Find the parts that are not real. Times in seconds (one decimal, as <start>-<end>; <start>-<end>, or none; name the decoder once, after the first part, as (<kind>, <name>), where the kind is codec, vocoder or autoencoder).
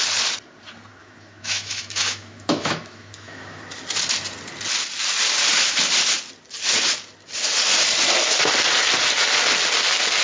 1.0-3.6 (autoencoder, DAC-VAE)